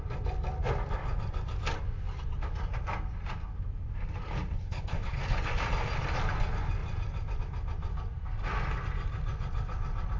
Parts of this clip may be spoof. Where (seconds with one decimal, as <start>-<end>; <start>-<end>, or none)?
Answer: 4.5-5.2